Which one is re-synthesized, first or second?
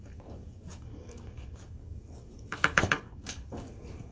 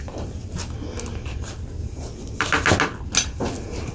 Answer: first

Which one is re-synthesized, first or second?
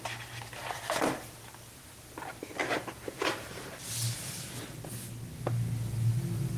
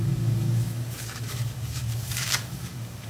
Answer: second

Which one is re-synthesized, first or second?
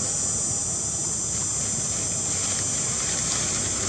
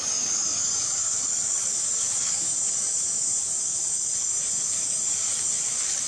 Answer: second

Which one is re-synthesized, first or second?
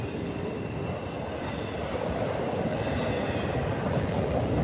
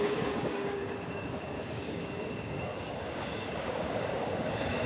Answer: second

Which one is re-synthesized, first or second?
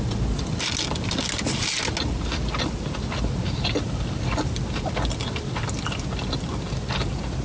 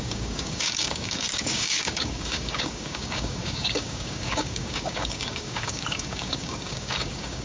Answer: second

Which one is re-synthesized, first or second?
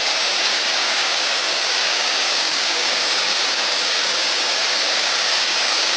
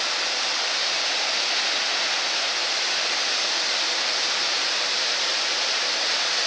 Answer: first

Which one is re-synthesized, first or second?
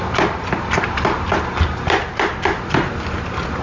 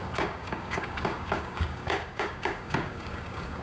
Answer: second